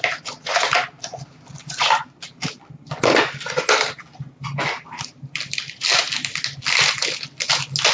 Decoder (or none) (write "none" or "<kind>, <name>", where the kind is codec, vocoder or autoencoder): none